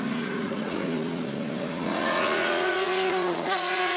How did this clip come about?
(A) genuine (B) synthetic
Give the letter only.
B